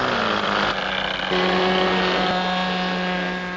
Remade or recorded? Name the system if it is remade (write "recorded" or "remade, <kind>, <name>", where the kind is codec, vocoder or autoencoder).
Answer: recorded